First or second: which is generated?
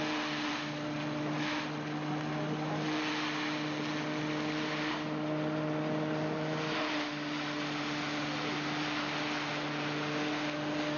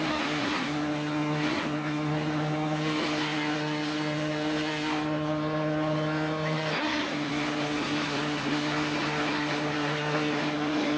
second